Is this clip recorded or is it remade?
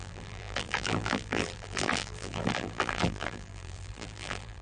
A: remade